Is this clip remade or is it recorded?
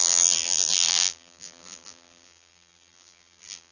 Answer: remade